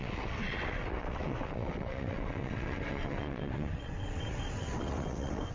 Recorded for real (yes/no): no